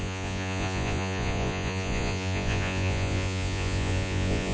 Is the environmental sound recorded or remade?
remade